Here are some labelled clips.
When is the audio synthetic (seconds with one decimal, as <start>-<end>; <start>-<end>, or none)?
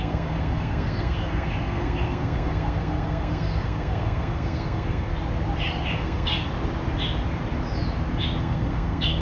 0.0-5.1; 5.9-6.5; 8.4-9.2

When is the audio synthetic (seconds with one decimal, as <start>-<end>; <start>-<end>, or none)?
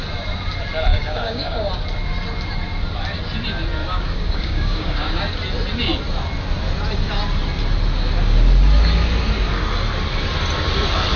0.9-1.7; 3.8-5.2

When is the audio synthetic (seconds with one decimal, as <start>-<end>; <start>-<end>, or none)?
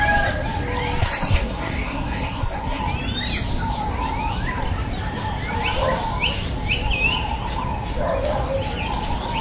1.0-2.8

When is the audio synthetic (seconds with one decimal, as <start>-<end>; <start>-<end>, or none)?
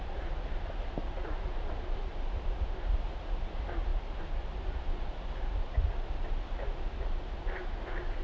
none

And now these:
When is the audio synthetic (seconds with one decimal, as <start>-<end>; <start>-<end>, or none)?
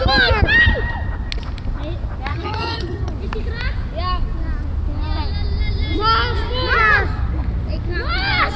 2.3-3.1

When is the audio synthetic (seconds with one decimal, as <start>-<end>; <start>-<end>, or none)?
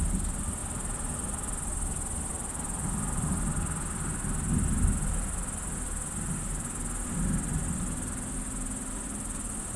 none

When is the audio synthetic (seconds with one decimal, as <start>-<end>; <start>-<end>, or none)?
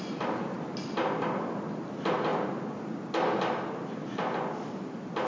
none